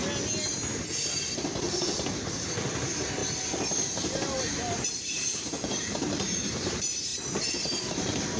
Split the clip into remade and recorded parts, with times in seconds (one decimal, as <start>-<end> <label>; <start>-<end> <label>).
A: 0.0-0.9 recorded; 0.9-3.2 remade; 3.2-3.9 recorded; 3.9-7.1 remade; 7.1-7.9 recorded; 7.9-8.4 remade

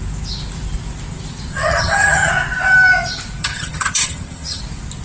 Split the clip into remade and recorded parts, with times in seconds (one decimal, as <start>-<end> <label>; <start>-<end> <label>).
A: 0.0-1.5 recorded; 1.5-2.3 remade; 2.3-3.4 recorded; 3.4-4.6 remade; 4.6-5.0 recorded

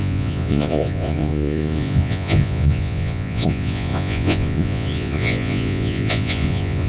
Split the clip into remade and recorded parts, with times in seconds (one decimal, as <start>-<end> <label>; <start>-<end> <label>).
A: 0.0-6.9 remade

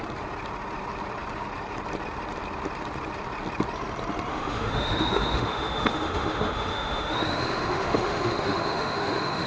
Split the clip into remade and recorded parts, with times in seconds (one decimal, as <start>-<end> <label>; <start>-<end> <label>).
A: 0.0-4.3 recorded; 4.3-9.5 remade